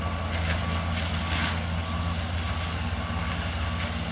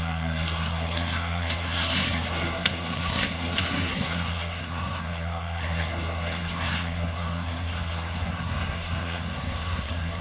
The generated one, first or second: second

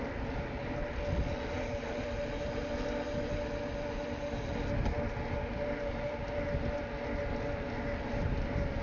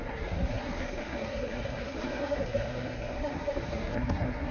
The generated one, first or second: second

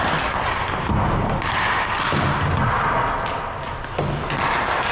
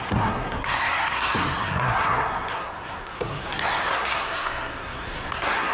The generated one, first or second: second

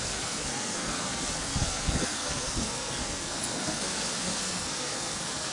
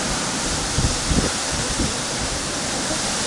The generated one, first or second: first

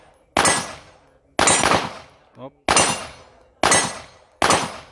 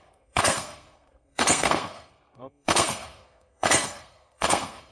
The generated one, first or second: second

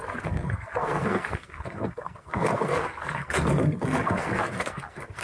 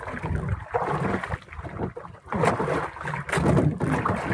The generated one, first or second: first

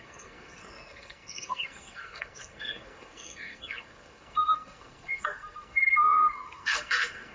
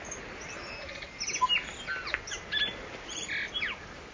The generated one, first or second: first